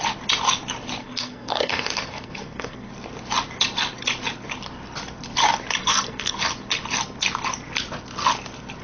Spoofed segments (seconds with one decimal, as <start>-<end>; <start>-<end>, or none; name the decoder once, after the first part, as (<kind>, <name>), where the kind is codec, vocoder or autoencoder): 1.0-2.9 (codec, SNAC); 5.8-6.4